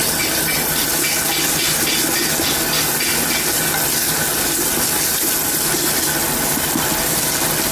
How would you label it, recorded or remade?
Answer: recorded